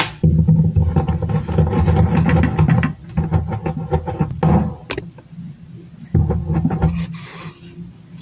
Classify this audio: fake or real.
real